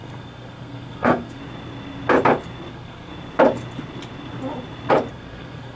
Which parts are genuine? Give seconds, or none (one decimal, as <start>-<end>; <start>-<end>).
1.4-2.7; 3.1-5.1